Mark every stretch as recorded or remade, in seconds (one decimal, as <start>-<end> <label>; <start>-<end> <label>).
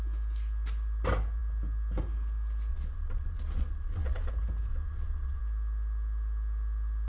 0.0-2.7 recorded; 2.7-4.3 remade; 4.3-4.7 recorded; 4.7-5.4 remade; 5.4-7.1 recorded